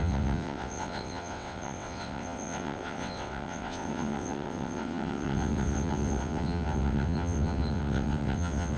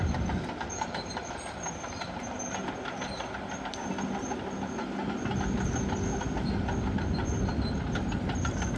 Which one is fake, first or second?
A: first